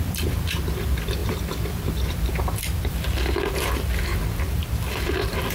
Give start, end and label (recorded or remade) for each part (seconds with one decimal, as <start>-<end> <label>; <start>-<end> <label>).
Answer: 0.0-4.1 remade; 4.1-4.7 recorded; 4.7-5.5 remade